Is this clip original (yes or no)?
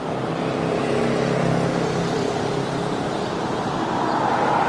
yes